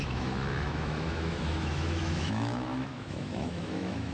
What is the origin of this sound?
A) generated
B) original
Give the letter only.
A